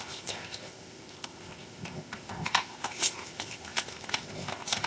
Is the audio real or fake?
fake